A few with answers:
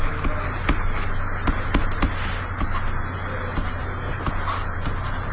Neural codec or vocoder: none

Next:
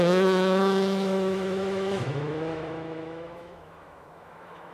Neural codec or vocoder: autoencoder, DAC-VAE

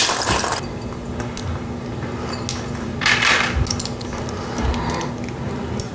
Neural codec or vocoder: none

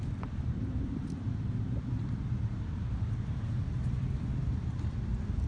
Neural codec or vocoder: vocoder, BigVGAN v2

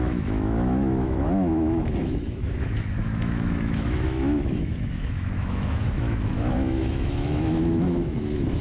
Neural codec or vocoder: autoencoder, DAC-VAE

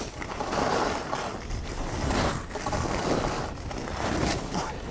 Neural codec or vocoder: none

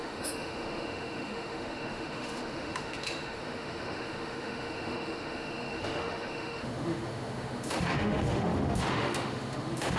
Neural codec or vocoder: autoencoder, DAC-VAE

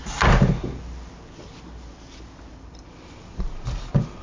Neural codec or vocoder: none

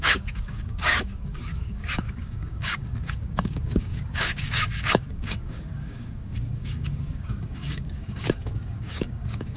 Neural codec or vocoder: codec, DAC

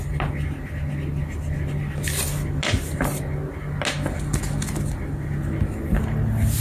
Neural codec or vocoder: none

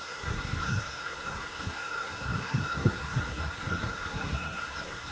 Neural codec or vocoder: codec, SNAC